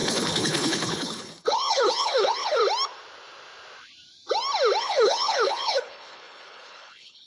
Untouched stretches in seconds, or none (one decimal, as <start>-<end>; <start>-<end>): 2.6-4.8